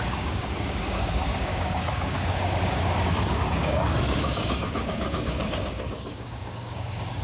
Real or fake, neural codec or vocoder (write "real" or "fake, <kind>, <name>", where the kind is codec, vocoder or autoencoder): fake, codec, DAC